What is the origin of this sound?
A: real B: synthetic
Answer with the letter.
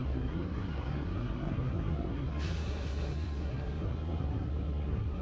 B